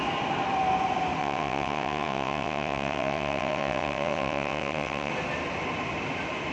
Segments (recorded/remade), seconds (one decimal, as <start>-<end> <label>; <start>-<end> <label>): 0.0-1.2 recorded; 1.2-5.1 remade; 5.1-6.5 recorded